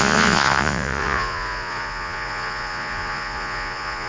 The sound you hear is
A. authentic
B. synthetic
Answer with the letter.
B